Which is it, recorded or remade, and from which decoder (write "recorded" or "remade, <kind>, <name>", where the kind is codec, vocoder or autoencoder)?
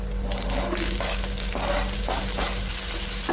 recorded